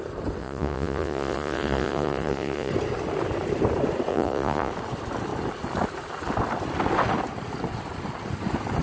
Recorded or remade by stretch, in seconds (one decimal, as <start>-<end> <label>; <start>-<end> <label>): 0.0-0.4 recorded; 0.4-2.7 remade; 2.7-4.1 recorded; 4.1-4.7 remade; 4.7-8.8 recorded

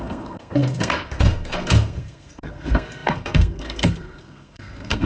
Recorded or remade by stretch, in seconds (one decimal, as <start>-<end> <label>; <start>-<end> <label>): 0.0-5.1 remade

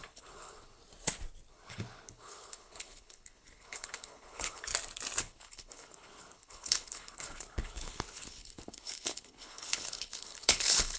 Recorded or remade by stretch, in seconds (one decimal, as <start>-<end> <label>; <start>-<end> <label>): 0.0-0.8 remade; 0.8-1.5 recorded; 1.5-4.7 remade; 4.7-5.2 recorded; 5.2-11.0 remade

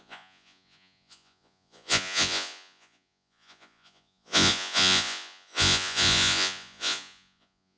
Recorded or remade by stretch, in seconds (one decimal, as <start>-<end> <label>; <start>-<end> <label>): 0.0-7.8 remade

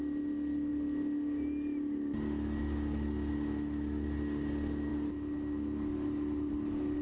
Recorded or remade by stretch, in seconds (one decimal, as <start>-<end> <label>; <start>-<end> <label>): 0.0-7.0 recorded